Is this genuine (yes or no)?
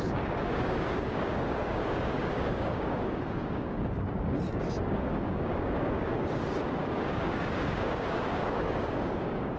no